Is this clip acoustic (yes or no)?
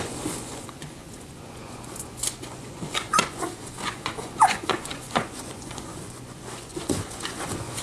no